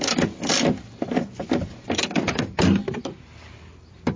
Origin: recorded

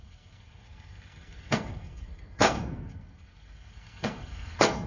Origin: remade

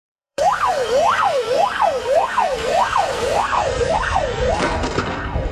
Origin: remade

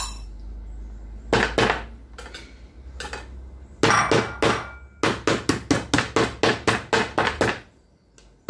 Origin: recorded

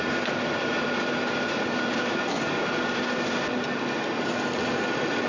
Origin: recorded